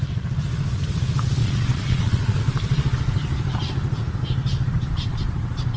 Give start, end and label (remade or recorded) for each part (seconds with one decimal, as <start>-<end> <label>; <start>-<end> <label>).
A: 0.0-1.4 recorded; 1.4-2.4 remade; 2.4-5.8 recorded

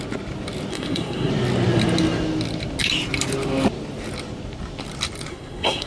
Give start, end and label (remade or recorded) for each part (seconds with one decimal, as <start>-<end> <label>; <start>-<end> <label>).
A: 0.0-0.7 recorded; 0.7-1.3 remade; 1.3-5.3 recorded; 5.3-5.9 remade

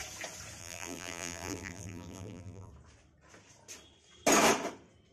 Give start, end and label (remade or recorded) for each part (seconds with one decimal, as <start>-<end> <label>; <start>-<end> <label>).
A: 0.0-0.6 recorded; 0.6-2.7 remade; 2.7-5.1 recorded

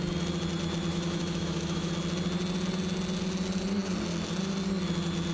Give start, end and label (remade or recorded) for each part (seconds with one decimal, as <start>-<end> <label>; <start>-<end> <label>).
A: 0.0-0.9 recorded; 0.9-1.9 remade; 1.9-5.3 recorded

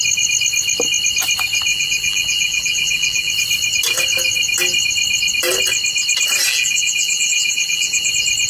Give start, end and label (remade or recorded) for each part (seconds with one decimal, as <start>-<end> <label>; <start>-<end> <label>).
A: 0.0-1.7 recorded; 1.7-3.3 remade; 3.3-6.5 recorded; 6.5-8.1 remade; 8.1-8.5 recorded

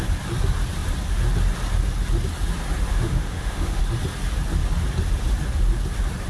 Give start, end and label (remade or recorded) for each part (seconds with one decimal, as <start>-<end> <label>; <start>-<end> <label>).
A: 0.0-2.9 recorded; 2.9-3.8 remade; 3.8-6.3 recorded